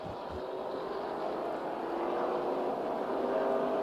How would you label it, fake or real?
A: real